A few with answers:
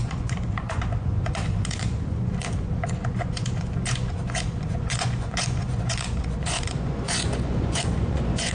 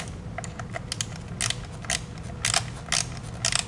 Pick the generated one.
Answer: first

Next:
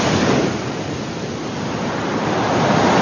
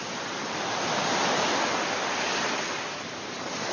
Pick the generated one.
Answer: second